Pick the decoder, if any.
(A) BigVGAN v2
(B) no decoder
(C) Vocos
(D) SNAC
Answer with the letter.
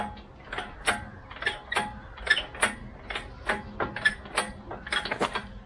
B